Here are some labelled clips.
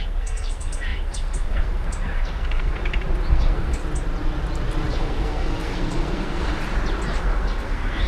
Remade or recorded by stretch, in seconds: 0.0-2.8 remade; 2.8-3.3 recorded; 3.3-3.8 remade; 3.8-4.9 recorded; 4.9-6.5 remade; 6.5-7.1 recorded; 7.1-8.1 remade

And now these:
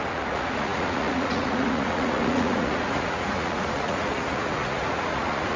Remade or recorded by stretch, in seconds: 0.0-5.6 remade

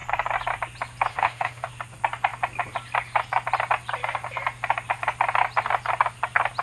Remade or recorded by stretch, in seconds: 0.0-1.1 recorded; 1.1-1.7 remade; 1.7-6.6 recorded

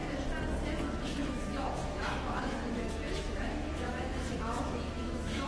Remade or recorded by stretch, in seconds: 0.0-0.8 recorded; 0.8-5.5 remade